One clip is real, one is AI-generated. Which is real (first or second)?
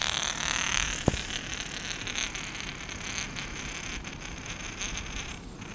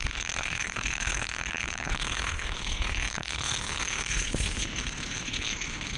first